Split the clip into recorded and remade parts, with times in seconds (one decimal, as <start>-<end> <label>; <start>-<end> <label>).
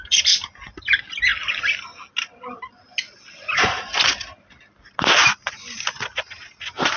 0.0-7.0 recorded